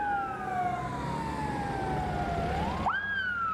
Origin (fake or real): real